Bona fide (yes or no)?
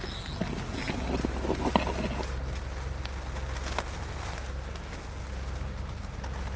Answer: yes